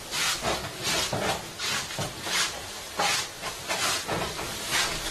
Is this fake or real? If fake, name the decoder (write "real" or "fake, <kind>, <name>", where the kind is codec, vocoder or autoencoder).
real